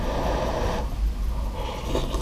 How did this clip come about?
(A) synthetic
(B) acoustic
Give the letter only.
B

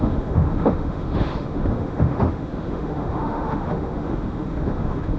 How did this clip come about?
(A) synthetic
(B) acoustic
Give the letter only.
A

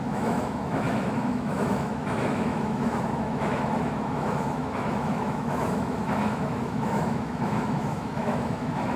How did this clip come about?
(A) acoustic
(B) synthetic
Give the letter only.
B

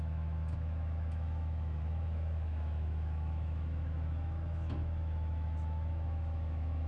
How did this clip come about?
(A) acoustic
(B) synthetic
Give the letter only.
B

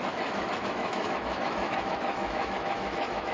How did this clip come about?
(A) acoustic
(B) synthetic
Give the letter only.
B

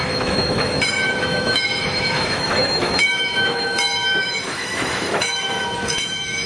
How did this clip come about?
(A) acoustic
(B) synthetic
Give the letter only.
B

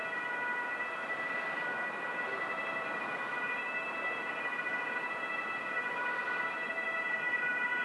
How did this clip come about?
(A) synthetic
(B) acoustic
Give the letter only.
B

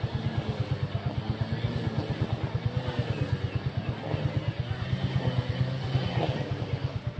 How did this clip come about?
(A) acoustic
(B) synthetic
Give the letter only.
A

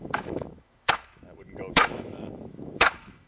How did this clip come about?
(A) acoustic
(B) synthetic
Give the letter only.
B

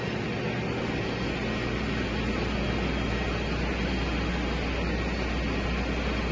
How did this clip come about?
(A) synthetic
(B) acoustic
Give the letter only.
B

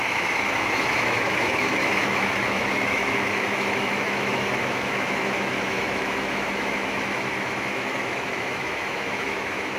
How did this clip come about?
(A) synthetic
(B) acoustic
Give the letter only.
A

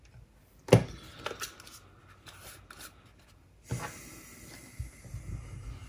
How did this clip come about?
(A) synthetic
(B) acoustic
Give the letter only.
B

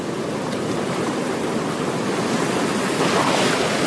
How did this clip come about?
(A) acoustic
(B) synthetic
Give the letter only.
A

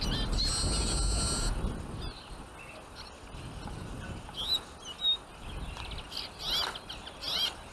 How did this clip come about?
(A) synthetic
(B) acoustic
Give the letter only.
B